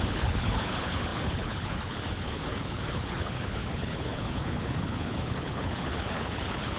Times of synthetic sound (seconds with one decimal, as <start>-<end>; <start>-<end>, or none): 0.0-6.8